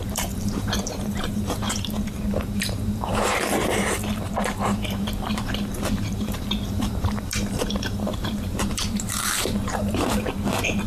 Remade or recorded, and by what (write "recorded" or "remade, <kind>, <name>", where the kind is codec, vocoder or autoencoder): remade, vocoder, BigVGAN v2